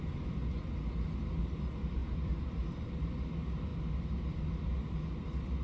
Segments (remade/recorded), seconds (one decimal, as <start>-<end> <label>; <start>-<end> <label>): 0.0-2.0 recorded; 2.0-3.0 remade; 3.0-5.6 recorded